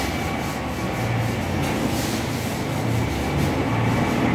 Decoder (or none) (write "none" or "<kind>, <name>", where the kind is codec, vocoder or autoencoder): none